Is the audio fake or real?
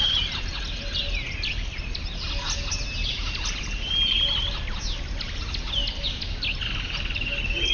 real